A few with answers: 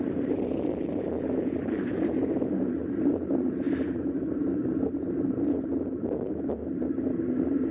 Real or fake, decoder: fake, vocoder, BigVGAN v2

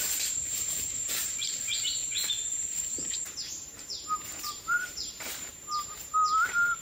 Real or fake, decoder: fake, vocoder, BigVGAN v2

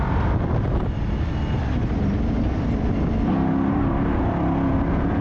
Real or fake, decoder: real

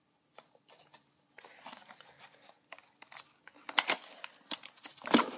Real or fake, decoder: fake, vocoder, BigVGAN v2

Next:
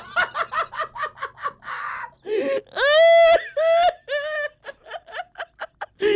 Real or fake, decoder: real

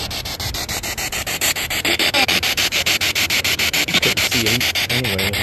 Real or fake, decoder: fake, vocoder, BigVGAN v2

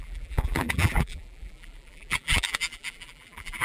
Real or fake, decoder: fake, vocoder, BigVGAN v2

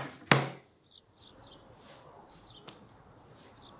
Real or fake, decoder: real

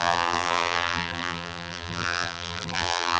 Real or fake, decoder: fake, vocoder, BigVGAN v2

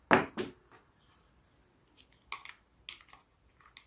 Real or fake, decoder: real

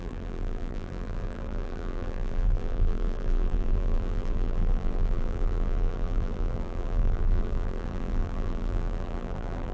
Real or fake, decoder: fake, vocoder, BigVGAN v2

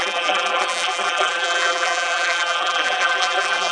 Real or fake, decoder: fake, vocoder, BigVGAN v2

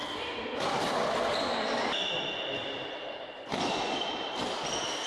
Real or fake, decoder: real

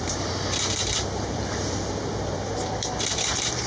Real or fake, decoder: fake, vocoder, BigVGAN v2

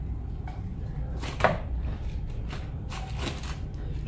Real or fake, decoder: fake, vocoder, BigVGAN v2